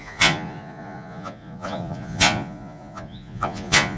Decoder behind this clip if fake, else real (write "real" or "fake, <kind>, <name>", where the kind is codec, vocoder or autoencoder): fake, vocoder, Vocos